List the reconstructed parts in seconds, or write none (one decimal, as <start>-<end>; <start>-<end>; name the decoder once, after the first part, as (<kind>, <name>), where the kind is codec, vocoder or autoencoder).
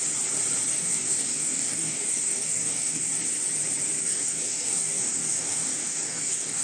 0.7-3.1 (codec, DAC); 4.0-6.6